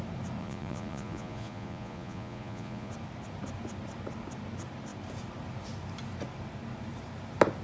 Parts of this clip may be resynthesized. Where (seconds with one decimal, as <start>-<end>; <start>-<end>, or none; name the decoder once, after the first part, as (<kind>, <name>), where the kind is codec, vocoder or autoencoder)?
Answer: 0.4-2.9 (vocoder, Vocos)